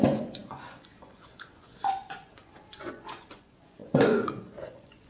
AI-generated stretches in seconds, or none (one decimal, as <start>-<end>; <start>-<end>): 0.0-5.1